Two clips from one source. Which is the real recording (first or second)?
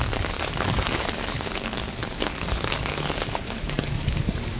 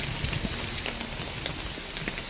second